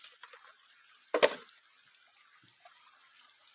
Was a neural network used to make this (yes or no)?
no